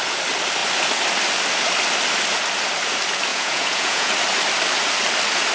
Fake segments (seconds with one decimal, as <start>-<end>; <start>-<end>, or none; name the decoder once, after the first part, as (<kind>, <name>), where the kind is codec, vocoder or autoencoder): 3.3-4.1 (vocoder, Vocos)